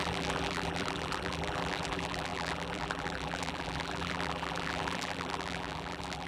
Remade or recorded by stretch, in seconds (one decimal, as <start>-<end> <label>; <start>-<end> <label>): 0.0-6.3 remade